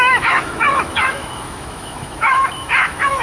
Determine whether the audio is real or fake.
fake